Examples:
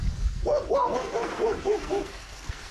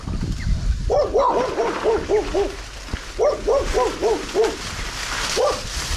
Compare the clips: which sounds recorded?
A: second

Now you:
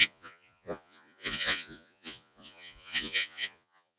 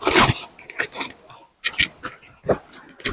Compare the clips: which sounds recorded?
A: second